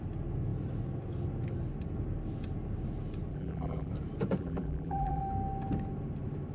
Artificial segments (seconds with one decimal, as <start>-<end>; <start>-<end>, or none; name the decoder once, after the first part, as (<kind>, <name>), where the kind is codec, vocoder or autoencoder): 3.3-3.9 (vocoder, BigVGAN v2); 4.4-5.2